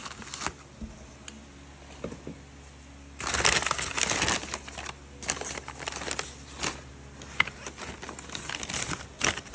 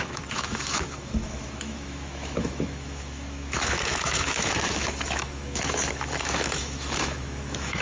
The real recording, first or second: first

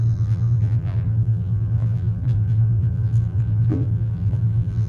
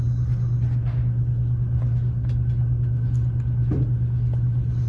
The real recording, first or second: second